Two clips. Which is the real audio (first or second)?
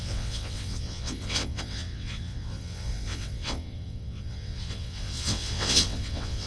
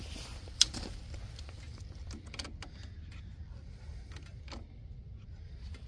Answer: second